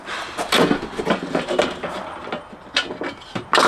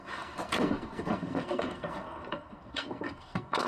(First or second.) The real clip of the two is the first